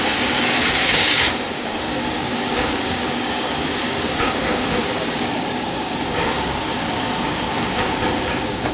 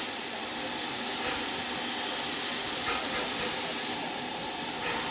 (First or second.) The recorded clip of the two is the second